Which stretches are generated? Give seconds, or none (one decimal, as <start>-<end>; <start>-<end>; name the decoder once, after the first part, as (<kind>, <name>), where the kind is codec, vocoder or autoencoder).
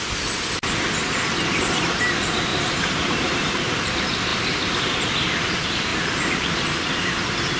2.5-3.9 (vocoder, BigVGAN v2); 4.3-4.9; 5.9-6.9